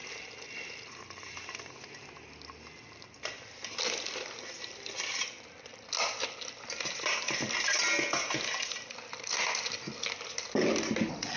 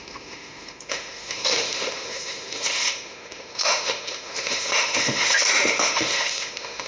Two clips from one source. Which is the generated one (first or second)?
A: second